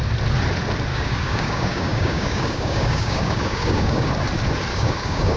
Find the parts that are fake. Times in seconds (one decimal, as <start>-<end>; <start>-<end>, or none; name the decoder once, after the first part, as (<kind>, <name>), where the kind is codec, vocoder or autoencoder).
0.9-4.1 (codec, DAC); 4.7-5.4